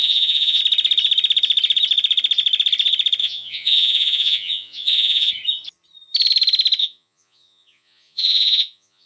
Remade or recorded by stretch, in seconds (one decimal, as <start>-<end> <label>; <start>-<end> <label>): 0.0-0.6 remade; 0.6-3.2 recorded; 3.2-5.3 remade; 5.3-6.8 recorded; 6.8-9.1 remade